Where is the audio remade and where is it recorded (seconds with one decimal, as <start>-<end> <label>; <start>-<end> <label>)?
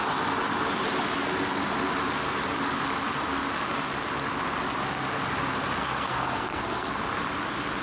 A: 0.0-5.8 recorded; 5.8-7.0 remade; 7.0-7.8 recorded